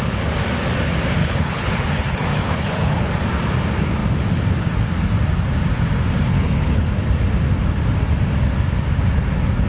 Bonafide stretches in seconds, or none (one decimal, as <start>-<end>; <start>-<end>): 0.0-1.2; 3.1-6.3; 6.8-9.7